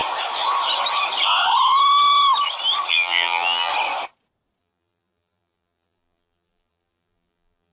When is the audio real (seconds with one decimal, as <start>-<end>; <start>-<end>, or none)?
0.0-2.9; 3.7-4.6